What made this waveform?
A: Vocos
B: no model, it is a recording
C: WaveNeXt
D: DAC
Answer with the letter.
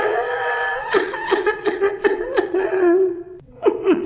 C